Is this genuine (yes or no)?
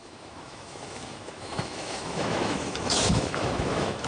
no